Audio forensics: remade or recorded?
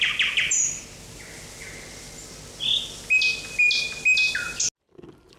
recorded